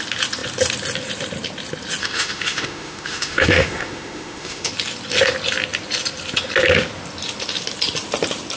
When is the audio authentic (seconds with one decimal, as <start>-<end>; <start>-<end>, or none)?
0.0-2.0; 4.7-8.6

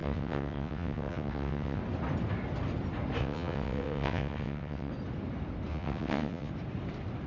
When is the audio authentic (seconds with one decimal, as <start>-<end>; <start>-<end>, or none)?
1.8-3.2; 4.9-5.7; 6.5-7.3

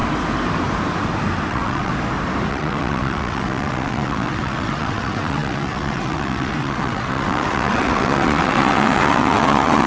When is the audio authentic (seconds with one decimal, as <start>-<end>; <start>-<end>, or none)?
0.0-1.5; 1.9-2.5

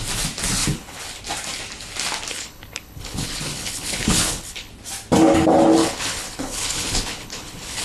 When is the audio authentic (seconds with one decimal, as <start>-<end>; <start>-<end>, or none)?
0.0-0.6; 1.2-2.3; 4.7-5.8

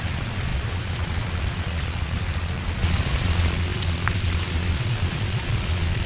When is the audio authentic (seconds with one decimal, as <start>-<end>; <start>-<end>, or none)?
none

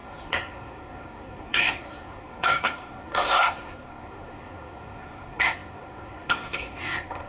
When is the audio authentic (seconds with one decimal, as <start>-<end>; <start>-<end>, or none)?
none